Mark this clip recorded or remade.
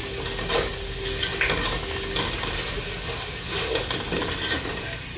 recorded